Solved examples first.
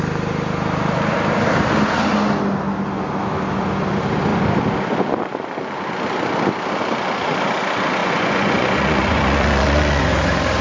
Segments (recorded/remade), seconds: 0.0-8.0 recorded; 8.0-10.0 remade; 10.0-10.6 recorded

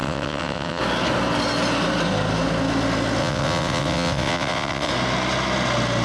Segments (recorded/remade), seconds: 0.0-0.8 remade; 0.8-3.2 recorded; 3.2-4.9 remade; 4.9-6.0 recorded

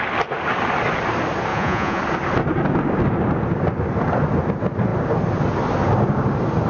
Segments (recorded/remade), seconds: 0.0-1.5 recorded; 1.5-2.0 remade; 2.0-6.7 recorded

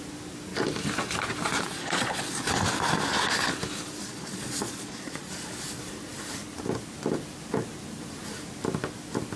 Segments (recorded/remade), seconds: 0.0-1.5 recorded; 1.5-2.3 remade; 2.3-4.0 recorded; 4.0-5.3 remade; 5.3-9.4 recorded

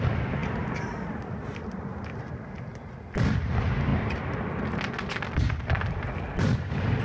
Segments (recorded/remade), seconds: 0.0-7.0 recorded

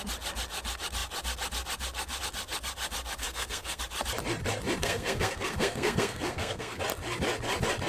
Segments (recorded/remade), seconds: 0.0-3.2 recorded; 3.2-3.8 remade; 3.8-4.8 recorded; 4.8-6.8 remade; 6.8-7.9 recorded

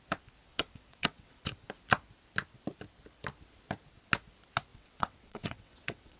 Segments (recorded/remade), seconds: 0.0-0.5 recorded; 0.5-1.4 remade; 1.4-4.7 recorded; 4.7-6.2 remade

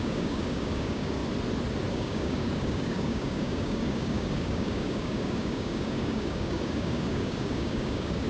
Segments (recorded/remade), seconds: 0.0-1.2 remade; 1.2-1.9 recorded; 1.9-8.3 remade